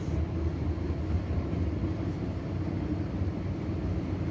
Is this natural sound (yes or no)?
yes